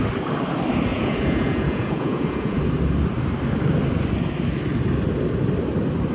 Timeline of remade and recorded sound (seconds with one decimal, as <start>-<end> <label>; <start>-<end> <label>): 0.0-0.9 recorded; 0.9-2.6 remade; 2.6-6.1 recorded